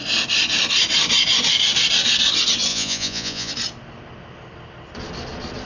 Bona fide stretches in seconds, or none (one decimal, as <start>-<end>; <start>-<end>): 0.0-2.7; 3.5-5.7